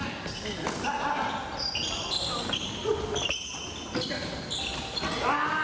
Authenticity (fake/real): real